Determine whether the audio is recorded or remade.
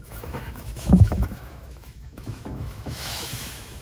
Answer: remade